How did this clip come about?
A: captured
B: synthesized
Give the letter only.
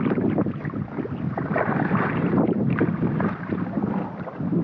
B